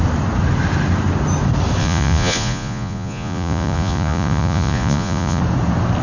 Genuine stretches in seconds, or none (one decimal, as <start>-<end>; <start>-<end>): 0.0-1.8; 5.4-6.0